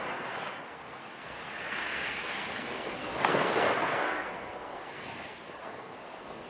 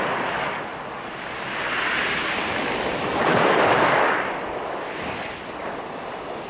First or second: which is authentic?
second